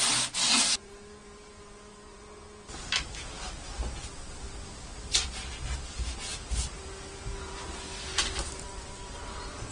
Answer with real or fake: real